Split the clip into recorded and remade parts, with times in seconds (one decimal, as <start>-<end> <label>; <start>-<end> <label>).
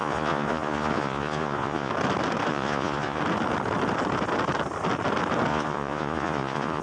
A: 0.0-1.9 remade; 1.9-2.5 recorded; 2.5-3.2 remade; 3.2-5.5 recorded; 5.5-6.8 remade